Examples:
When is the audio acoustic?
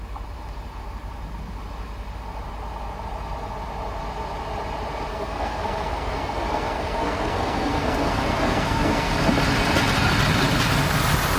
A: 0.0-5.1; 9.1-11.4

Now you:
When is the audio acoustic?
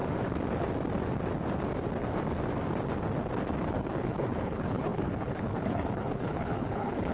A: 0.0-3.7